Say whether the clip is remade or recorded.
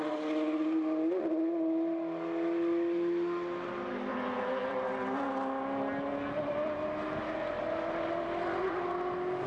recorded